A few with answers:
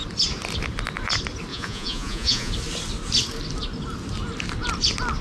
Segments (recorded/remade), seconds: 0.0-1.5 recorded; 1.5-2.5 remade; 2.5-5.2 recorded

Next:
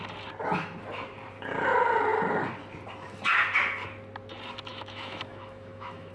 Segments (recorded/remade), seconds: 0.0-4.7 recorded; 4.7-6.1 remade

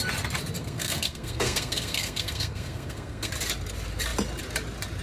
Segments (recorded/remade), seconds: 0.0-0.6 recorded; 0.6-3.3 remade; 3.3-5.0 recorded

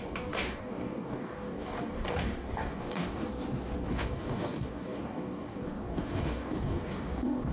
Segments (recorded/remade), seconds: 0.0-3.3 remade; 3.3-3.9 recorded; 3.9-7.5 remade

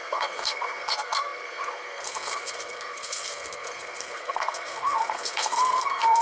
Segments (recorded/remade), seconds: 0.0-6.2 remade

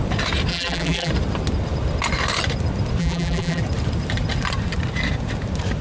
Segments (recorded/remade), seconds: 0.0-0.5 recorded; 0.5-1.1 remade; 1.1-3.0 recorded; 3.0-3.6 remade; 3.6-5.8 recorded

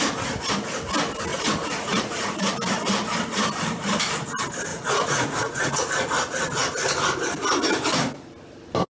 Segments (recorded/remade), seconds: 0.0-1.3 recorded; 1.3-2.5 remade; 2.5-4.7 recorded; 4.7-5.8 remade; 5.8-9.0 recorded

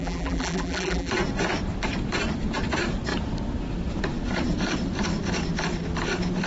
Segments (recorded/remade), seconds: 0.0-1.1 remade; 1.1-6.5 recorded